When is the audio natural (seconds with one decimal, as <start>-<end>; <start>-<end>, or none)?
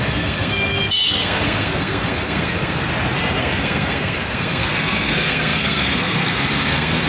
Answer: 2.9-3.4